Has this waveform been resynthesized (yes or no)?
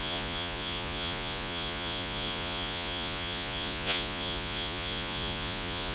yes